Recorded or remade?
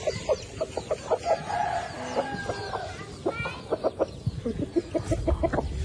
recorded